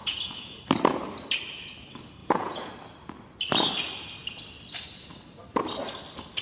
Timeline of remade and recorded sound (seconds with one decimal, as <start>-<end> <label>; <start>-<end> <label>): 0.0-0.6 remade; 0.6-2.2 recorded; 2.2-2.7 remade; 2.7-6.4 recorded